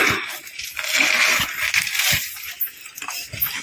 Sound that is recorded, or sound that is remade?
recorded